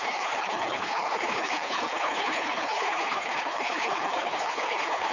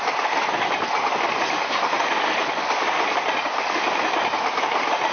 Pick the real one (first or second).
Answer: second